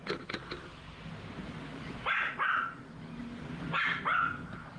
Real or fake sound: real